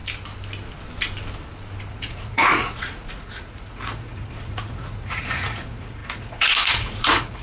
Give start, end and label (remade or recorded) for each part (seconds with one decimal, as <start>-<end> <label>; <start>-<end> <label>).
0.0-1.9 recorded; 1.9-7.4 remade